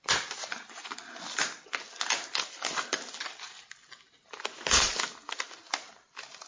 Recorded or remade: recorded